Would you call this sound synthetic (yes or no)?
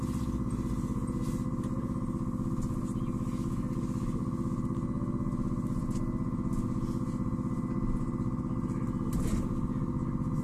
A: no